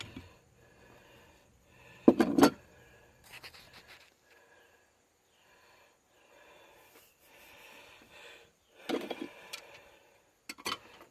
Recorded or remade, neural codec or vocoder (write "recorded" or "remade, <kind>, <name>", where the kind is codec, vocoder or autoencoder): recorded